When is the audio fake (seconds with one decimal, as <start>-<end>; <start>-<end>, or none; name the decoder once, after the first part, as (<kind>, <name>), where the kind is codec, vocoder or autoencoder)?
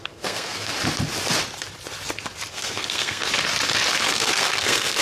0.0-0.7 (codec, SNAC); 2.5-3.2; 4.0-5.0